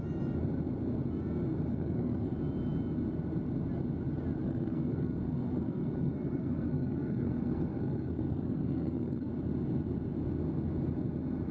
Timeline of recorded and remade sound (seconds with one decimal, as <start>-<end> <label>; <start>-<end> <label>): 0.0-1.7 recorded; 1.7-2.3 remade; 2.3-4.4 recorded; 4.4-9.3 remade; 9.3-11.5 recorded